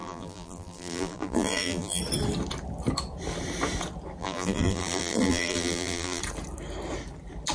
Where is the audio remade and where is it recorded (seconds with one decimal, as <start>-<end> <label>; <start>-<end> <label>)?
0.0-2.0 remade; 2.0-4.2 recorded; 4.2-6.2 remade; 6.2-7.5 recorded